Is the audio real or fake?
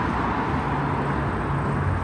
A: real